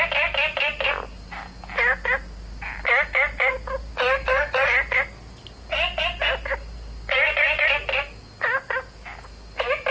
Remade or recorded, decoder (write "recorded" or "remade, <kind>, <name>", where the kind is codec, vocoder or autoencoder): recorded